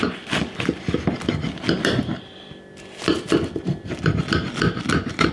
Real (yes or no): yes